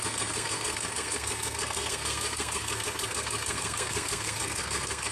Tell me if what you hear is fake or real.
fake